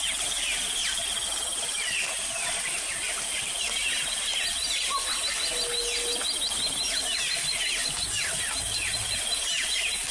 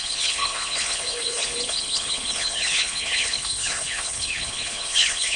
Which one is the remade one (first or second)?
second